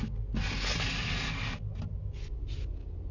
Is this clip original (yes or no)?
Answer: yes